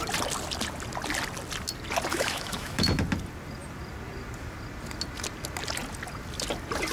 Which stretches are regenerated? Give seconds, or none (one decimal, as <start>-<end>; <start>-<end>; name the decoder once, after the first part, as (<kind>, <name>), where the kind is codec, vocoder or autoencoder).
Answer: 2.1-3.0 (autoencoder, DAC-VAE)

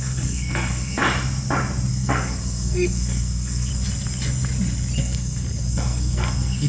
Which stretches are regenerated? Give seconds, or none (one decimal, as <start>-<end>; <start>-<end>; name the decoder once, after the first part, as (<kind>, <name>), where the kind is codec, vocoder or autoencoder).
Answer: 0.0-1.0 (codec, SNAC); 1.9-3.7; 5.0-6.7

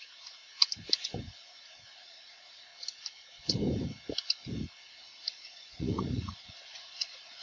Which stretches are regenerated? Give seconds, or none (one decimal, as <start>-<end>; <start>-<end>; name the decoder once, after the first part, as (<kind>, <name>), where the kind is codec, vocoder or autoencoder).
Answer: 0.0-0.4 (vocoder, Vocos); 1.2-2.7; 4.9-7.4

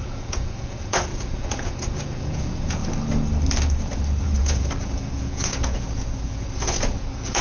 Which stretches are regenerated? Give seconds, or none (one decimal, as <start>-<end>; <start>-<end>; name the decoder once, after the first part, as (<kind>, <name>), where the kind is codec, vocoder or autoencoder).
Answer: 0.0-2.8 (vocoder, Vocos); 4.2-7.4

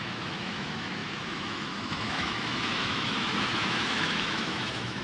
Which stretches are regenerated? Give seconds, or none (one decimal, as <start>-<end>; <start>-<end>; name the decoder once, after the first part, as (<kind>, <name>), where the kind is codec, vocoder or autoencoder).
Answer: 0.0-5.0 (autoencoder, DAC-VAE)